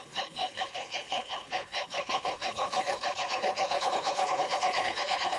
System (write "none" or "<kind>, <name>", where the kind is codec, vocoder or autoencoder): codec, HILCodec